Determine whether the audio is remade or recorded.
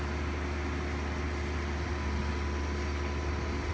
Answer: recorded